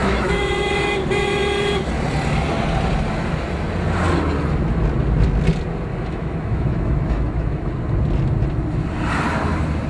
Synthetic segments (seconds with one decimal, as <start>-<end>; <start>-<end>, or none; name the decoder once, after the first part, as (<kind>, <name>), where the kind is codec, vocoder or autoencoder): 0.0-0.7 (autoencoder, DAC-VAE); 5.9-7.7